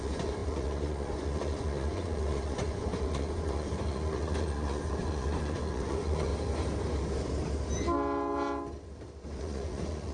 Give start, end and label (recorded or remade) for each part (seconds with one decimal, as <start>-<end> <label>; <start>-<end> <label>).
0.0-6.3 remade; 6.3-9.4 recorded; 9.4-10.1 remade